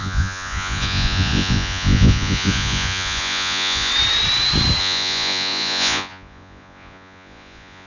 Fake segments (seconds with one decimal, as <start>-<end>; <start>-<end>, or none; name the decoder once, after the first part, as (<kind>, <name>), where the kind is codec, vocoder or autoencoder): 0.0-3.9 (vocoder, Vocos); 4.8-7.9

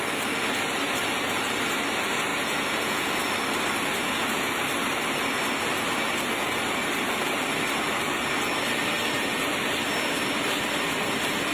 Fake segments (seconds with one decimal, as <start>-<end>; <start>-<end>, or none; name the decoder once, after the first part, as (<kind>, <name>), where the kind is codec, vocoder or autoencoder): 2.3-3.2 (vocoder, Vocos); 4.0-4.5

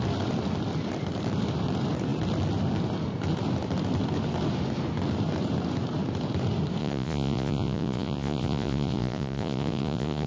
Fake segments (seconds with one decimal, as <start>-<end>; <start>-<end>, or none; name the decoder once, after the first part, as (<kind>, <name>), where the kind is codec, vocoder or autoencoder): 6.8-10.3 (vocoder, Vocos)

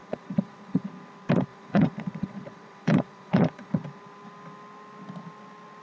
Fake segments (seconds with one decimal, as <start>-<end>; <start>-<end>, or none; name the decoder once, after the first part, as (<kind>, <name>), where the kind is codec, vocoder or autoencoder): 0.0-0.9 (vocoder, Vocos); 1.5-3.8

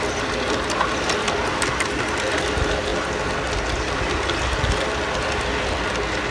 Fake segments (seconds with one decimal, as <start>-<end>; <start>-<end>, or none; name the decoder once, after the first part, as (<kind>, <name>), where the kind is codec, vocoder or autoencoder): none

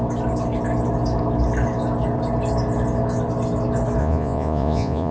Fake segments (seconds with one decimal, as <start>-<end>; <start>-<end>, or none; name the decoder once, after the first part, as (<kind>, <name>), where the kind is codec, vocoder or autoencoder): 4.0-5.1 (vocoder, Vocos)